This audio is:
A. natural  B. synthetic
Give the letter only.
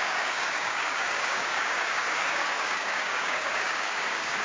B